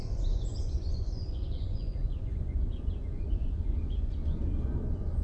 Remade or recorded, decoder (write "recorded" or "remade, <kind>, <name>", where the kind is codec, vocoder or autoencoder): remade, vocoder, Vocos